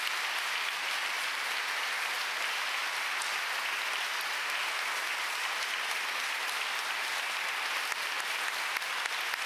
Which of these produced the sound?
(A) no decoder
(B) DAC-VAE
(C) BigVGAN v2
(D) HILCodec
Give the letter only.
A